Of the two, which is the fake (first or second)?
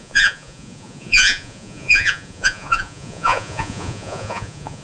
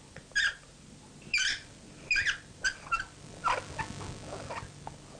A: first